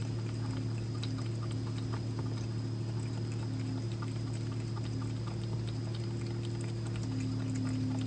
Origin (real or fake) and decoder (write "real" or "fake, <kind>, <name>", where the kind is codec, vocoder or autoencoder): real